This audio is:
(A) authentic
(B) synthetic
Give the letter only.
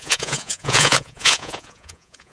B